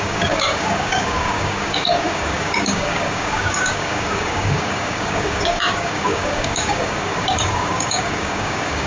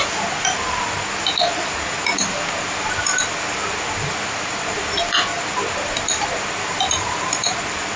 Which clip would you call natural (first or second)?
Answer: second